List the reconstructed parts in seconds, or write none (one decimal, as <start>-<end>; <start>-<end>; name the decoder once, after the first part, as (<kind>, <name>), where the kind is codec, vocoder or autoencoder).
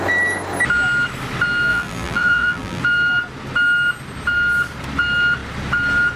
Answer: 1.7-2.8 (vocoder, BigVGAN v2)